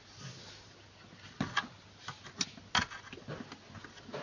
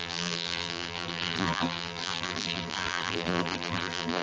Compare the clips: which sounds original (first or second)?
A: first